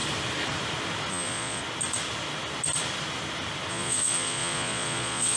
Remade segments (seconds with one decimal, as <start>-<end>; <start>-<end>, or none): 1.1-1.6; 3.7-5.4